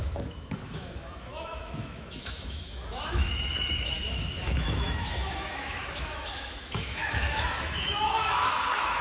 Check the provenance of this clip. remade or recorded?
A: remade